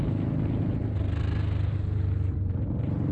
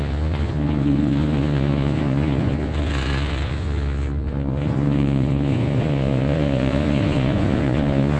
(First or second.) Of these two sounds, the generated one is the second